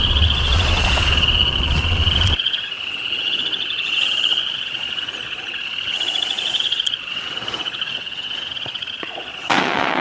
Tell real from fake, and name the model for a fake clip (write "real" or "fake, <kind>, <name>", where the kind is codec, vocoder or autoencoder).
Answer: fake, vocoder, Vocos